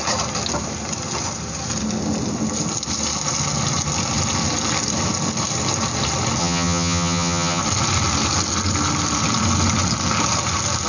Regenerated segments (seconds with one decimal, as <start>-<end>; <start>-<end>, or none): 6.4-7.6